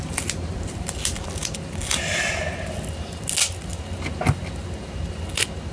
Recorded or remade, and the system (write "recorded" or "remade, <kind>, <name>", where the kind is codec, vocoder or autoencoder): recorded